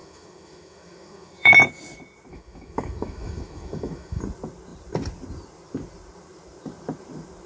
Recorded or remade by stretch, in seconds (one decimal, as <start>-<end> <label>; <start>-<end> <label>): 0.0-1.5 remade; 1.5-2.3 recorded; 2.3-4.2 remade; 4.2-7.5 recorded